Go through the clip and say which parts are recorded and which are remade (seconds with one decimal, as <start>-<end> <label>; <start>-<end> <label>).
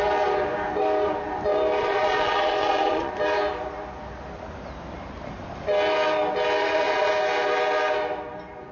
0.0-1.8 recorded; 1.8-3.1 remade; 3.1-6.6 recorded; 6.6-7.1 remade; 7.1-8.7 recorded